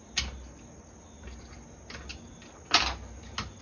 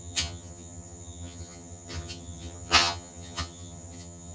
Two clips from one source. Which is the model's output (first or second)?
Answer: second